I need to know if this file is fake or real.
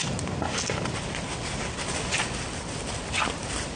real